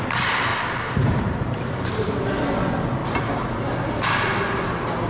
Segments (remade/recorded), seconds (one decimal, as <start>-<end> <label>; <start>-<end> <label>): 0.0-0.5 recorded; 0.5-2.2 remade; 2.2-5.1 recorded